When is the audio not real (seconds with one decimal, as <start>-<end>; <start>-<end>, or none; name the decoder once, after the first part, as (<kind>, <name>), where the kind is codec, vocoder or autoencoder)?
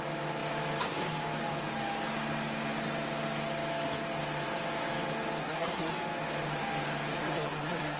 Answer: 5.4-5.9 (codec, SNAC); 7.2-8.0